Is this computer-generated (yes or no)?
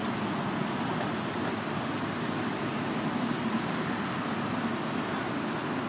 no